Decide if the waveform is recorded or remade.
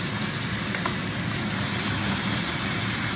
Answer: recorded